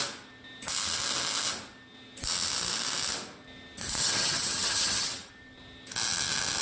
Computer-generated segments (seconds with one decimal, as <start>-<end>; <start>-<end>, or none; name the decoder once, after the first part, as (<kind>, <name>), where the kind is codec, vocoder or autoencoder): 4.0-5.3 (vocoder, HiFi-GAN)